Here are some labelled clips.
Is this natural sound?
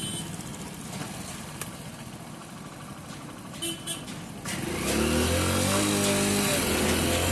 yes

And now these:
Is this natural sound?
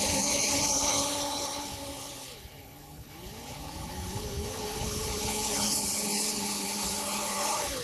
no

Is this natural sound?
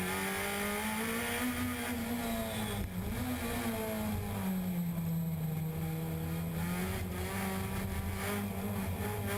yes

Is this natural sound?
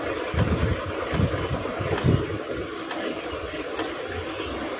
yes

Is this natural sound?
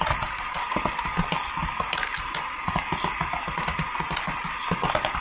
yes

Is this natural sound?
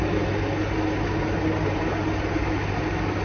yes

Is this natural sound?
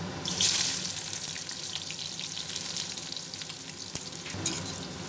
yes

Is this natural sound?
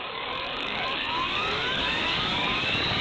no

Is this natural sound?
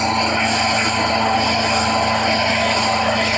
yes